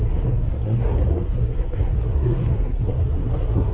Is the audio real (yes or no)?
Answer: no